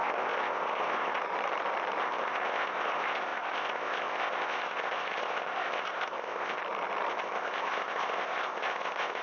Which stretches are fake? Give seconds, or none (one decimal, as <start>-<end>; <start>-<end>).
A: 0.0-1.2; 2.0-6.6; 7.1-9.2